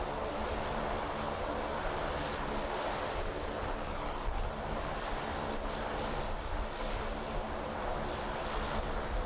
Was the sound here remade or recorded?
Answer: recorded